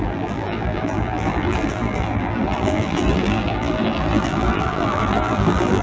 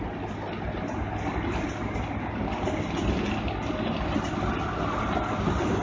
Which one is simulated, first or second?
first